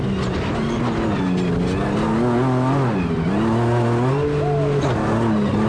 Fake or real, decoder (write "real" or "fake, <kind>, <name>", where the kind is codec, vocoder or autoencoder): real